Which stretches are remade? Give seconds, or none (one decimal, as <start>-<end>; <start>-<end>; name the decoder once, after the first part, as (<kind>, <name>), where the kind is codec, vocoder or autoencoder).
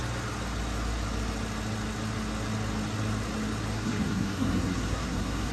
3.7-5.5 (codec, SNAC)